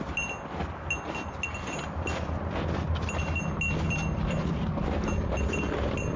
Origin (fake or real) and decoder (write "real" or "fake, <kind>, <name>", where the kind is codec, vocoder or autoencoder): real